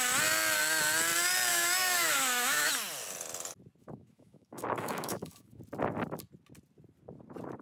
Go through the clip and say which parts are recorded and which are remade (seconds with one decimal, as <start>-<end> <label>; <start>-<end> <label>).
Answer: 0.0-1.5 recorded; 1.5-2.7 remade; 2.7-3.8 recorded; 3.8-5.6 remade; 5.6-7.6 recorded